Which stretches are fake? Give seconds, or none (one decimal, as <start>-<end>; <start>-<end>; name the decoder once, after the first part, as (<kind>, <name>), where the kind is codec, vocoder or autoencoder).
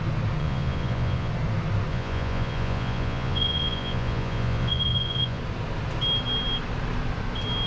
0.4-1.3 (vocoder, Vocos); 1.9-5.4